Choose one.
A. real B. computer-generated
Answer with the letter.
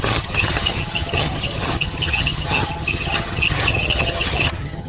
B